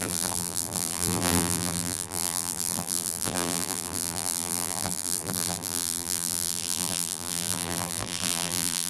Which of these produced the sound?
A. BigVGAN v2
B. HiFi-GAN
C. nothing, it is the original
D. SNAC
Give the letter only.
A